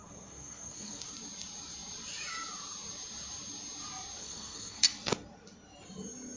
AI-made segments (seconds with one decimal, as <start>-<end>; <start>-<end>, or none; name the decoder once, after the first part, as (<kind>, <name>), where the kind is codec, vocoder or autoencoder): 0.0-1.0 (codec, SNAC); 4.2-4.8